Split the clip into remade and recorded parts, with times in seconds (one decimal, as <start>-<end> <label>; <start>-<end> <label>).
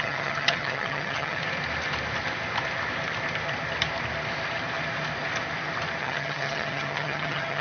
0.0-1.4 remade; 1.4-6.0 recorded; 6.0-7.6 remade